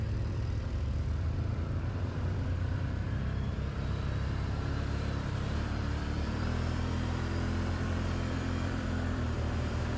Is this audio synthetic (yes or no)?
yes